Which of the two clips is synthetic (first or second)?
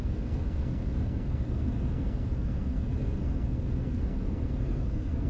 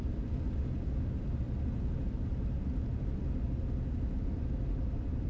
first